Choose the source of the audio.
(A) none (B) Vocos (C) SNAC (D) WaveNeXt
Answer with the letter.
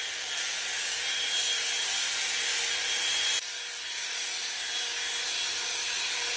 A